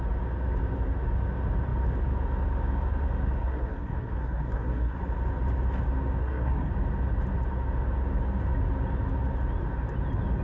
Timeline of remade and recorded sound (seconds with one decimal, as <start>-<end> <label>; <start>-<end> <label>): 0.0-3.4 recorded; 3.4-5.0 remade; 5.0-6.2 recorded; 6.2-6.7 remade; 6.7-10.4 recorded